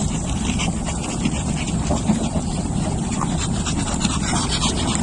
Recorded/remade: remade